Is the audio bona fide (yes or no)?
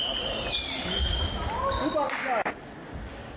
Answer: yes